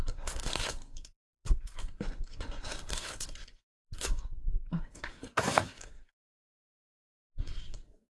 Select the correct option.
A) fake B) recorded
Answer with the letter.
A